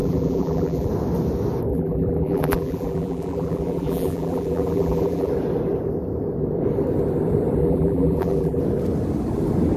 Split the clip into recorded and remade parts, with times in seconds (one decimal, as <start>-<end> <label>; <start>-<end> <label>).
0.0-0.9 remade; 0.9-1.7 recorded; 1.7-5.3 remade; 5.3-7.6 recorded; 7.6-8.6 remade; 8.6-9.8 recorded